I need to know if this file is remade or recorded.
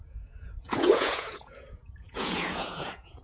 remade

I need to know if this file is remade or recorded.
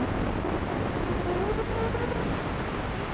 recorded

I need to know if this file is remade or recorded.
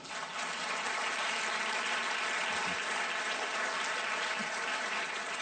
recorded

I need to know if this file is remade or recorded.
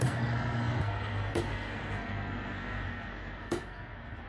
remade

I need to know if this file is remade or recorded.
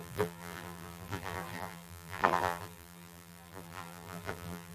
remade